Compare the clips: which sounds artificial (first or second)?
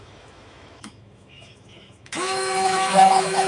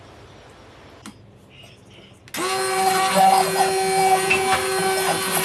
first